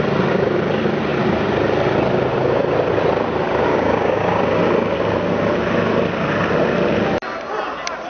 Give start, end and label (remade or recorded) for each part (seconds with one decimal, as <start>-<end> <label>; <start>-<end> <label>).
0.0-3.7 recorded; 3.7-4.4 remade; 4.4-8.1 recorded